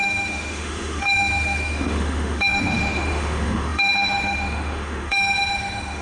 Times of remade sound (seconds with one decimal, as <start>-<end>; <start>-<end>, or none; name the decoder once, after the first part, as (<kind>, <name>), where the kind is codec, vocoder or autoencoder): 0.0-6.0 (autoencoder, DAC-VAE)